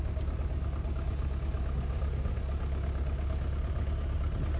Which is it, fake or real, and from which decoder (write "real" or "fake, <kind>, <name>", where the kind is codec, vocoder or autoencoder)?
real